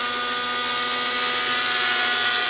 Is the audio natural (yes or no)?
yes